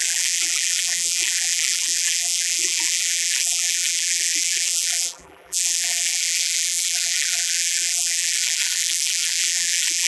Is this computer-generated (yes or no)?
yes